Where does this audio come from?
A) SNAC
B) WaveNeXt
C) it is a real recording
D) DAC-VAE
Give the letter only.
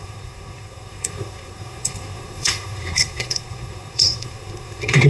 A